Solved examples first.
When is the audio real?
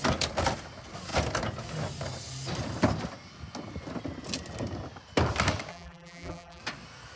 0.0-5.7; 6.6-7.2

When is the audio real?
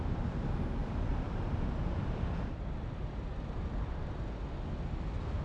0.0-0.8; 4.0-5.4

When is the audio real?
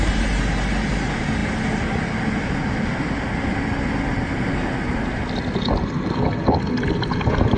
0.0-7.6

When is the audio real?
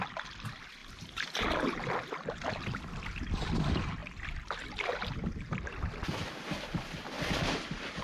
0.0-8.0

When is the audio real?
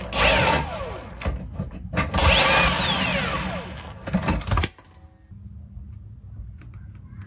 0.0-7.3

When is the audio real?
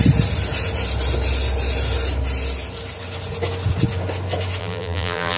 0.0-4.6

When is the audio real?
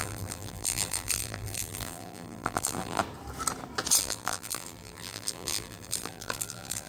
3.0-4.0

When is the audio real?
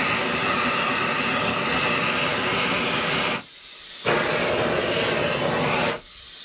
0.0-6.4